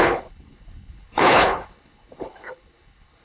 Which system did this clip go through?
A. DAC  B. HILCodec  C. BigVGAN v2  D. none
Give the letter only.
B